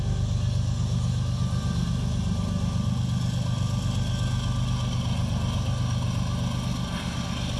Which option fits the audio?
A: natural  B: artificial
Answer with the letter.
A